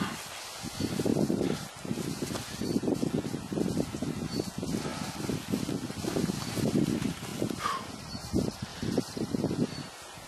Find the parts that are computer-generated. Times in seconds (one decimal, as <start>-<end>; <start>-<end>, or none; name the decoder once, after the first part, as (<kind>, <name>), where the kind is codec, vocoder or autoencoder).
1.1-3.1 (vocoder, BigVGAN v2); 4.9-5.7